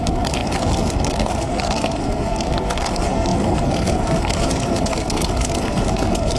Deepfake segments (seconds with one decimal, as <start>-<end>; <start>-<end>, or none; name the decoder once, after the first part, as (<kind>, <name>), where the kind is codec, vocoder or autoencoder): 0.0-6.4 (codec, SNAC)